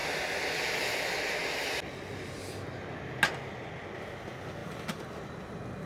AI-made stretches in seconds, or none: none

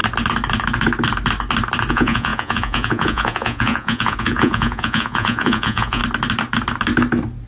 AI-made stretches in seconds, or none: 1.9-6.0 (vocoder, Vocos)

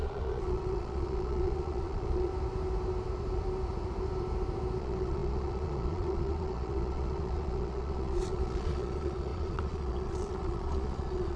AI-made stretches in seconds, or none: 0.0-2.3 (vocoder, Vocos); 4.8-11.4